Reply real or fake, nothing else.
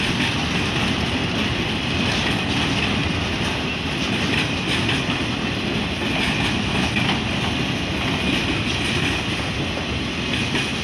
real